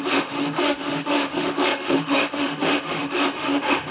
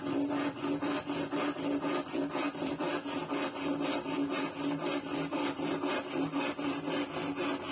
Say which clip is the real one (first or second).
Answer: second